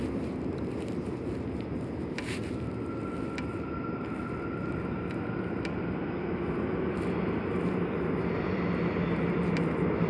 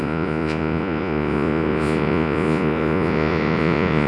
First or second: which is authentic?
first